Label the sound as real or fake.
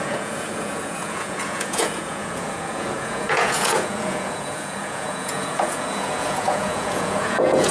fake